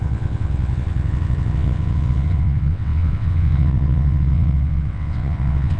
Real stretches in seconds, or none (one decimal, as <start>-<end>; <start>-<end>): none